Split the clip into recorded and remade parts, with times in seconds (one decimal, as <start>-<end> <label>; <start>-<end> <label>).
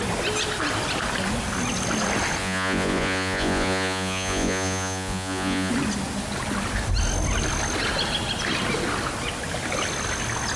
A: 0.0-2.4 recorded; 2.4-5.7 remade; 5.7-10.6 recorded